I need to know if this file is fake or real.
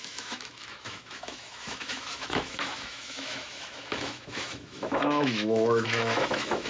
fake